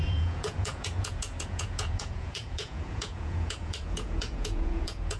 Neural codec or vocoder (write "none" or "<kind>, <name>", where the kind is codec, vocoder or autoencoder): vocoder, Vocos